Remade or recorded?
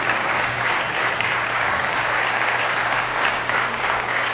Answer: remade